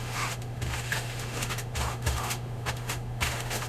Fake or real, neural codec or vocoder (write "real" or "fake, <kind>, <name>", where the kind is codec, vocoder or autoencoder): fake, autoencoder, DAC-VAE